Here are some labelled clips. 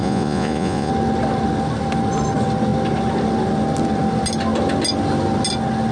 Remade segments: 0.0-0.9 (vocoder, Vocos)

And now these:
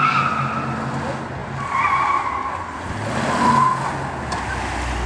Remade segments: none

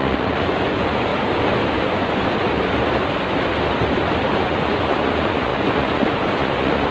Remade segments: 0.0-1.1 (vocoder, Vocos); 1.8-2.2; 4.4-6.9

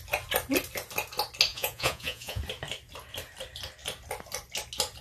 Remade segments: 1.5-2.4 (vocoder, Vocos)

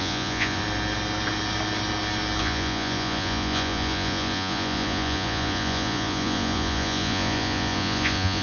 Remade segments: 0.0-0.6 (vocoder, Vocos); 2.4-8.4

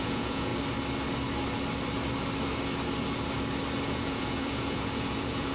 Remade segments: 0.0-0.5 (vocoder, Vocos); 3.8-5.5

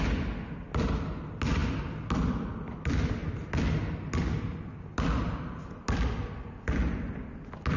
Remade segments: none

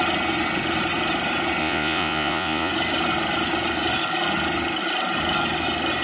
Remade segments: 1.6-2.7 (vocoder, Vocos)